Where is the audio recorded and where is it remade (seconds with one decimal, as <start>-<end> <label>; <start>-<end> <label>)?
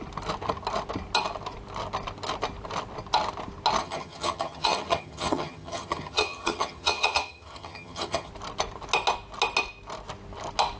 0.0-3.8 recorded; 3.8-8.3 remade; 8.3-10.8 recorded